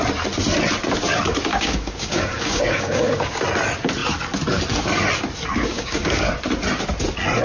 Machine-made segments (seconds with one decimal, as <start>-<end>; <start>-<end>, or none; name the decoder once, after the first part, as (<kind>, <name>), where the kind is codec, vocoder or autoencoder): 1.5-3.4 (codec, DAC); 5.6-6.3